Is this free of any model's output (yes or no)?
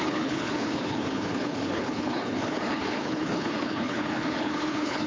no